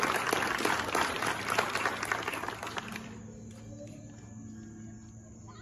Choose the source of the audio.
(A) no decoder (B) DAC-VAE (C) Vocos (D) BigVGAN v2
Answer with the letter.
A